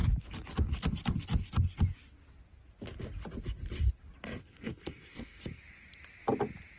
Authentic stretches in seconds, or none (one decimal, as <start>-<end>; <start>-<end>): 0.0-4.4; 5.6-6.8